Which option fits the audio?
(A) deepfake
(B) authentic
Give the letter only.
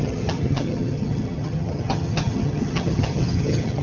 A